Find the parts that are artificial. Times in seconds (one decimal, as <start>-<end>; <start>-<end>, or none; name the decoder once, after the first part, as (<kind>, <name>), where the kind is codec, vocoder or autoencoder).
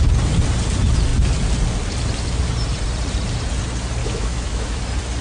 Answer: 4.0-4.8 (autoencoder, DAC-VAE)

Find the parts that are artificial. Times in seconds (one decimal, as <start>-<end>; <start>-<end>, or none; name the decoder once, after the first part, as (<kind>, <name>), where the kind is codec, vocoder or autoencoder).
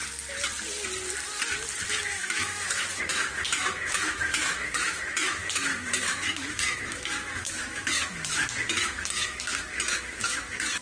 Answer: 2.0-10.8 (autoencoder, DAC-VAE)